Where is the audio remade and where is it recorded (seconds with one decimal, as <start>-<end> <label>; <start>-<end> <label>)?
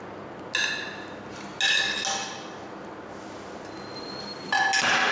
0.0-5.1 recorded